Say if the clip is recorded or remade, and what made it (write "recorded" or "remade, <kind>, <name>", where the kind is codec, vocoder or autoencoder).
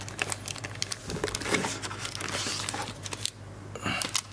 recorded